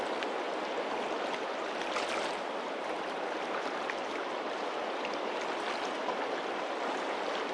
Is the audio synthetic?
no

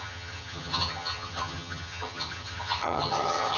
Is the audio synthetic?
yes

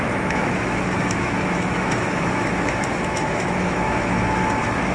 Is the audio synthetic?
yes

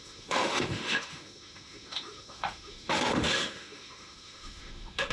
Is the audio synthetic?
yes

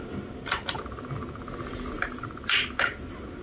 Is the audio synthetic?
no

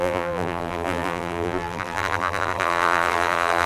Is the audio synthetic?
yes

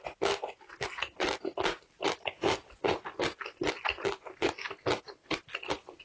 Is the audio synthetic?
no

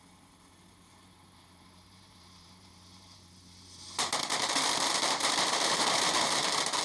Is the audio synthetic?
yes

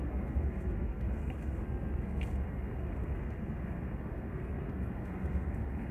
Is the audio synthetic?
yes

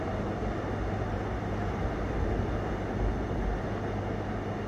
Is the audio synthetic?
no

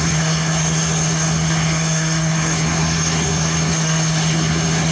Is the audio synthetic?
yes